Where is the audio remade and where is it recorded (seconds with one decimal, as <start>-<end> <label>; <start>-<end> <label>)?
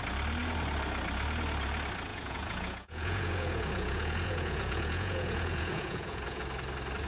0.0-2.1 recorded; 2.1-6.4 remade; 6.4-7.1 recorded